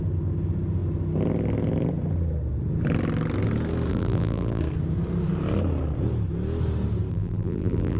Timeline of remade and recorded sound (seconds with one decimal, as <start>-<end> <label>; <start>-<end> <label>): 0.0-3.9 recorded; 3.9-4.6 remade; 4.6-7.1 recorded; 7.1-8.0 remade